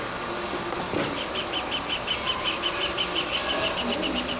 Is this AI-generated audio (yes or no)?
no